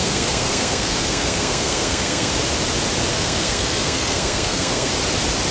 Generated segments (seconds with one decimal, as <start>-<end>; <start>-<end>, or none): 0.0-2.3; 3.1-4.9